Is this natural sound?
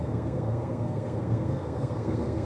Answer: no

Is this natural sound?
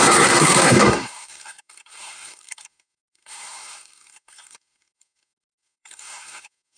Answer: no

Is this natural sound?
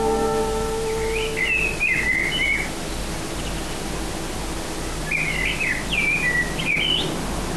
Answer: yes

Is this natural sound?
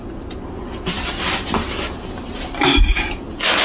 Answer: yes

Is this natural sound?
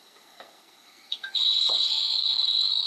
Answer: no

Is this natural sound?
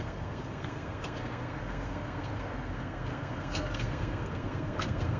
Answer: no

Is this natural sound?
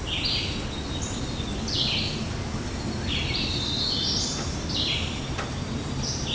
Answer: yes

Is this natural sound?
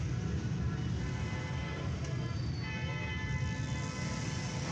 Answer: yes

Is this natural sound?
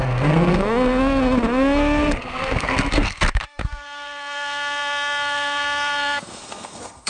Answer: no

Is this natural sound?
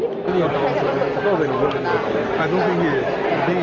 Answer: yes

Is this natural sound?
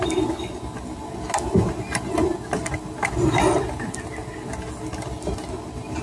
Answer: yes